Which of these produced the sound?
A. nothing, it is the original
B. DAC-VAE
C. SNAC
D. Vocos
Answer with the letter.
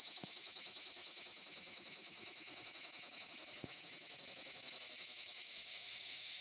B